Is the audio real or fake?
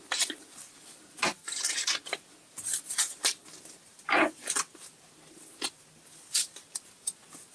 real